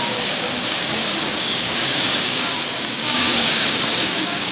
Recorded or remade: remade